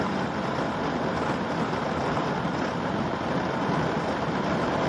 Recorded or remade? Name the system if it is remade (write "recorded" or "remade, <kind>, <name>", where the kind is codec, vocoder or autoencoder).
recorded